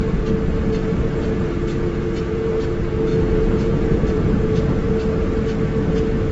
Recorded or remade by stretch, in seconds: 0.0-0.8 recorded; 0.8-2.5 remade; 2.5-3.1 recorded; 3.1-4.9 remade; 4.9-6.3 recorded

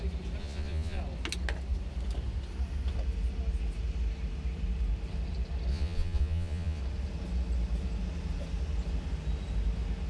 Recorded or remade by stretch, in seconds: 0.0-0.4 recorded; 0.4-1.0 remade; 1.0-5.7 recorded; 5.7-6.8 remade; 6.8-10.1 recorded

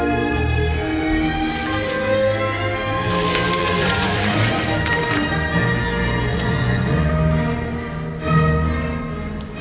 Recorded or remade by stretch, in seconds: 0.0-3.6 recorded; 3.6-4.6 remade; 4.6-6.3 recorded; 6.3-7.1 remade; 7.1-9.6 recorded